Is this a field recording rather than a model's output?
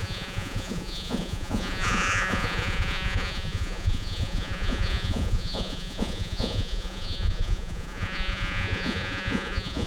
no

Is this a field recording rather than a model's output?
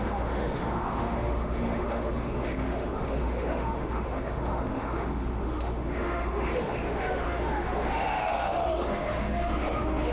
no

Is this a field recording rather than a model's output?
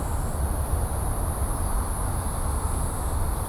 yes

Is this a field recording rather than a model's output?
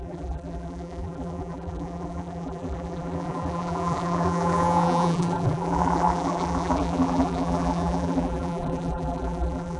no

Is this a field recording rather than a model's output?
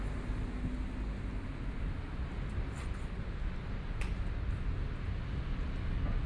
yes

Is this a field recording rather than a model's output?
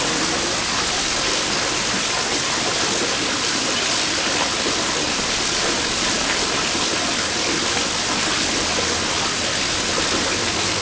yes